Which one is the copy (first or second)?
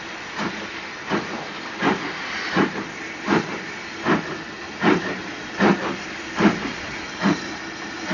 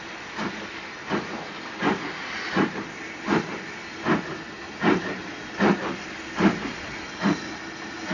first